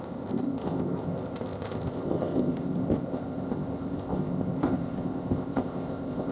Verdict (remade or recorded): remade